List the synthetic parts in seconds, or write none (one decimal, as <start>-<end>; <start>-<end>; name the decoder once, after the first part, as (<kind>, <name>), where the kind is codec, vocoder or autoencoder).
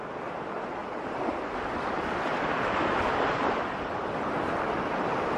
0.8-4.0 (vocoder, BigVGAN v2)